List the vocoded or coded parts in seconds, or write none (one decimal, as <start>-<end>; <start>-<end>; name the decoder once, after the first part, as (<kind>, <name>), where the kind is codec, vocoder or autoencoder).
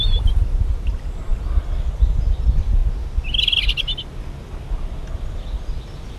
none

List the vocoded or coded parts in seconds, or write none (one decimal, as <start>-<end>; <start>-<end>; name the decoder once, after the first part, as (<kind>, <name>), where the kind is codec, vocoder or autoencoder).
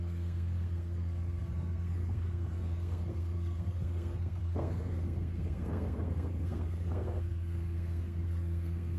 0.0-9.0 (codec, SNAC)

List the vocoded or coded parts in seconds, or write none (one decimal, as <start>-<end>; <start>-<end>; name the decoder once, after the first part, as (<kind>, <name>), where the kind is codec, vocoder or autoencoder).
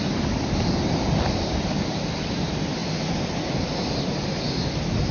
none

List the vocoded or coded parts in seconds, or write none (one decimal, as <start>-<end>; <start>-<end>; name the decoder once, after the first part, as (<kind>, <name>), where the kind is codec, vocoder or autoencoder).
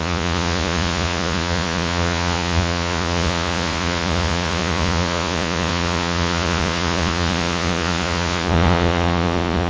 0.0-9.7 (vocoder, Vocos)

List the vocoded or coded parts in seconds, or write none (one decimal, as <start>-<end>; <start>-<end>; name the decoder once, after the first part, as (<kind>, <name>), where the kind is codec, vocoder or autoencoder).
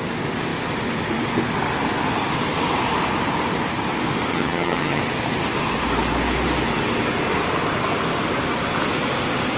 4.3-5.0 (vocoder, HiFi-GAN)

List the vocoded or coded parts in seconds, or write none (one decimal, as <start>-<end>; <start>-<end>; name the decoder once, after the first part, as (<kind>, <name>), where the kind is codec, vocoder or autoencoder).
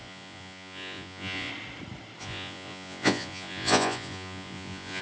0.0-1.5 (vocoder, Vocos); 2.2-5.0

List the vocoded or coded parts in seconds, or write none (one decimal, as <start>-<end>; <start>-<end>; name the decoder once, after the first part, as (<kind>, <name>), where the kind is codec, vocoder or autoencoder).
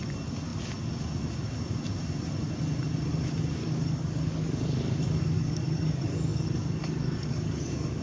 3.6-8.0 (codec, DAC)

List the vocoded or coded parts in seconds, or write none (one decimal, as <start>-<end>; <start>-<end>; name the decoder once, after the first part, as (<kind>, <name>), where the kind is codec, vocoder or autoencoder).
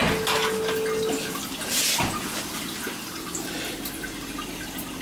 none